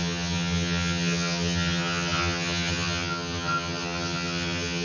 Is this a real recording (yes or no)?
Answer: no